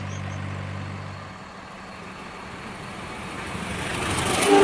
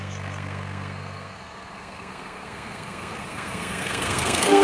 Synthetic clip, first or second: second